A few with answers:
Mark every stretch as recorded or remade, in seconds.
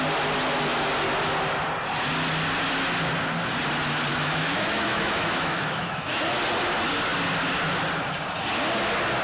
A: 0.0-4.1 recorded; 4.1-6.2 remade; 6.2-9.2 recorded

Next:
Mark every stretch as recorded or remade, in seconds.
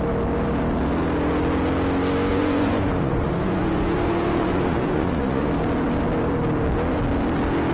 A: 0.0-2.3 recorded; 2.3-5.5 remade; 5.5-7.7 recorded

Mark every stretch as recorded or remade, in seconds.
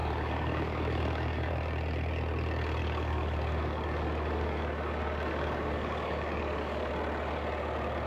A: 0.0-1.5 remade; 1.5-2.8 recorded; 2.8-6.9 remade; 6.9-8.1 recorded